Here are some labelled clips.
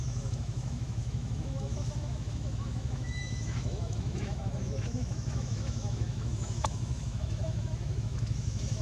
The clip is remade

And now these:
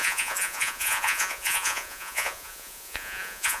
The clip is remade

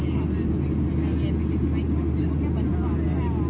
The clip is recorded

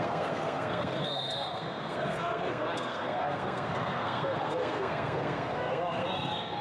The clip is remade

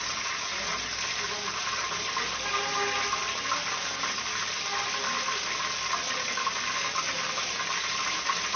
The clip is recorded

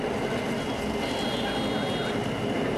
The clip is recorded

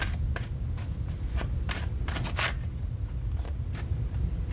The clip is recorded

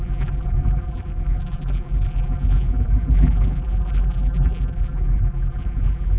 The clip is remade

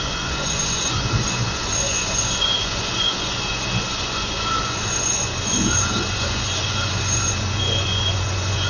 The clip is remade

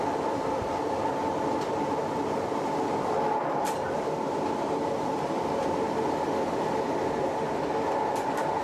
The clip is recorded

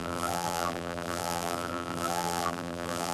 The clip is remade